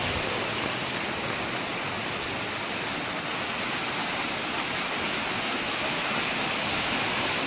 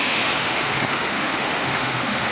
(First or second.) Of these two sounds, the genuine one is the first